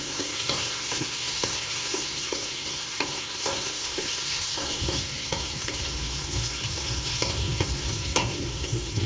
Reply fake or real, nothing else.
fake